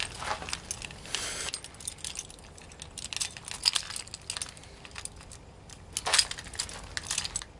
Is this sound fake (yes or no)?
no